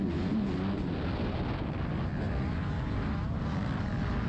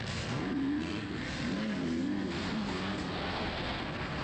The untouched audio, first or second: first